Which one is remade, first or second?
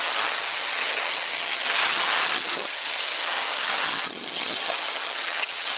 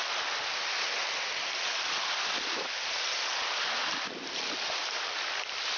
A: first